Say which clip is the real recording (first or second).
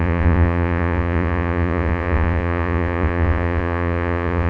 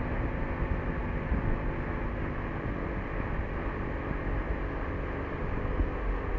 second